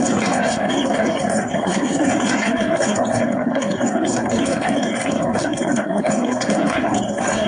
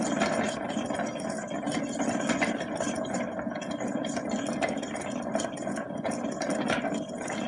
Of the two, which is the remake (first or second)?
first